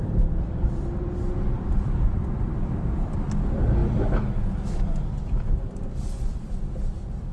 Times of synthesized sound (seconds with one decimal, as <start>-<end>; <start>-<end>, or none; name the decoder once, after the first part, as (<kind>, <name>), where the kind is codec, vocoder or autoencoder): 0.0-3.8 (vocoder, BigVGAN v2); 5.6-7.3